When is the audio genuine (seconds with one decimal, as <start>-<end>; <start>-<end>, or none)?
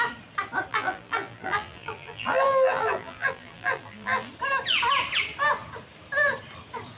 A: 0.0-0.7; 4.3-7.0